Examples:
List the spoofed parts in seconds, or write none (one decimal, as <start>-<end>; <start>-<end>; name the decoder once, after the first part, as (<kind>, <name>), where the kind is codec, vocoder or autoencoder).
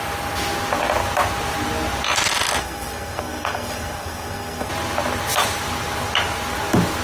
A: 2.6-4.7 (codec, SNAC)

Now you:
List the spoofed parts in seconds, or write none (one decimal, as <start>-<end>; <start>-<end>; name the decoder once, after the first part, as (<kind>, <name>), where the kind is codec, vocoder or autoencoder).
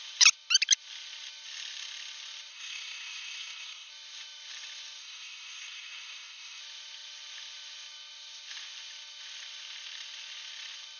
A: 2.5-3.9 (codec, SNAC); 5.0-6.6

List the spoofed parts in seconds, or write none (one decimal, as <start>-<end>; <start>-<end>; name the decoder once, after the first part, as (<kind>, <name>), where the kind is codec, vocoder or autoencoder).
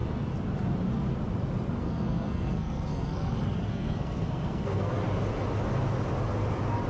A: 1.8-4.9 (codec, SNAC)